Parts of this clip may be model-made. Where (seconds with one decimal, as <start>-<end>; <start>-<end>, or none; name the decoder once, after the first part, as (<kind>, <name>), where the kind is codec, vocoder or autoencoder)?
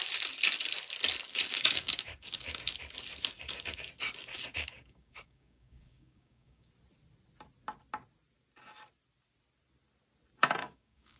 1.3-2.6 (codec, DAC); 3.3-3.9; 4.3-6.7; 10.6-11.2